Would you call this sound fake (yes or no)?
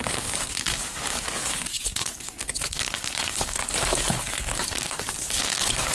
yes